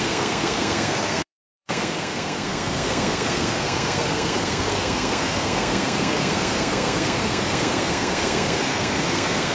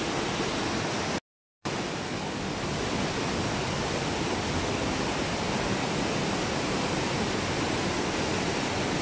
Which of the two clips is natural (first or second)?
second